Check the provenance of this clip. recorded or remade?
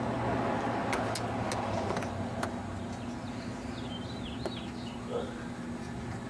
recorded